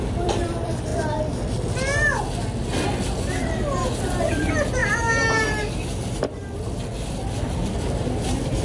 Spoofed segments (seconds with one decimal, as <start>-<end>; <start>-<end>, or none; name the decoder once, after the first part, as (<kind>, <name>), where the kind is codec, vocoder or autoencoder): 0.0-0.9 (vocoder, BigVGAN v2); 4.3-4.8; 7.0-8.6